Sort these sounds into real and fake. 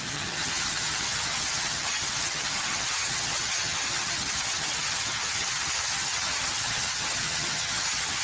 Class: fake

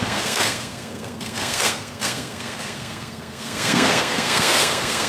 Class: fake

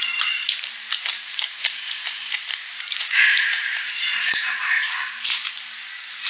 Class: fake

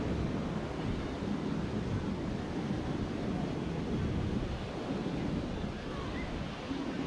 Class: real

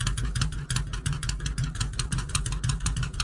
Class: fake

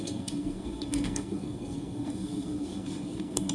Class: fake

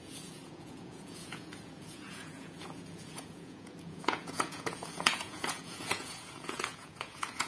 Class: fake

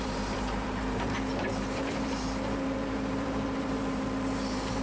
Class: fake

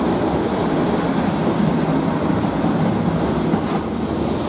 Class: real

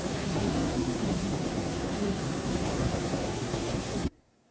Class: fake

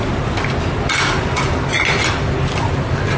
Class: real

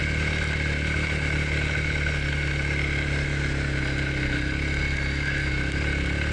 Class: real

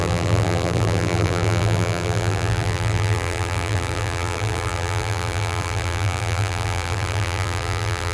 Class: fake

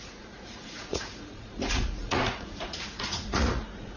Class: fake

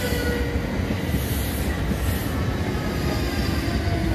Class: real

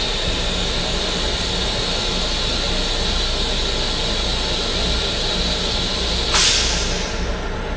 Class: real